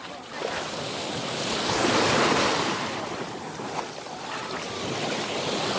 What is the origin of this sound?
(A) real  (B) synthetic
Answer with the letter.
A